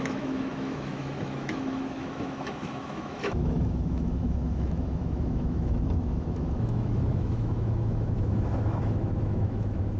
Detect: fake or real fake